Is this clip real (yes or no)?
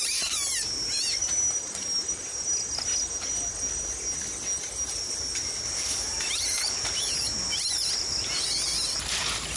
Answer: yes